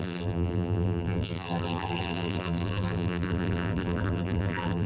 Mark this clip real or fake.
fake